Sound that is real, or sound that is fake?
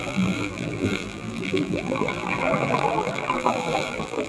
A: fake